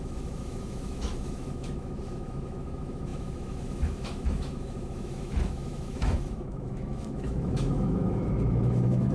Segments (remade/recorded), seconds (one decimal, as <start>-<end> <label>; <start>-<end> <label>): 0.0-9.1 remade